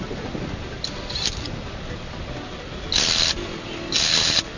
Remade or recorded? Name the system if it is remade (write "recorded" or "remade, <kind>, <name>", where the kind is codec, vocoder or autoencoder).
recorded